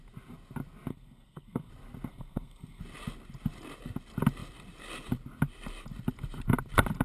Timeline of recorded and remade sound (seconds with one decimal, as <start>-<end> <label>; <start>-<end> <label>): 0.0-0.9 recorded; 0.9-1.7 remade; 1.7-2.1 recorded; 2.1-2.8 remade; 2.8-7.0 recorded